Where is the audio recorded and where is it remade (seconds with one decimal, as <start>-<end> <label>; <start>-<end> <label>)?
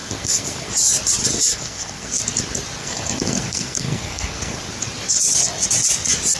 0.0-0.7 remade; 0.7-1.5 recorded; 1.5-2.2 remade; 2.2-2.8 recorded; 2.8-4.6 remade; 4.6-6.4 recorded